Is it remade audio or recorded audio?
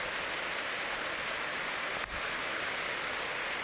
recorded